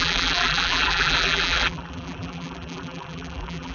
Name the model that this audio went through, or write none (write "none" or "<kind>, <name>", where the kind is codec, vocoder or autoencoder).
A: vocoder, BigVGAN v2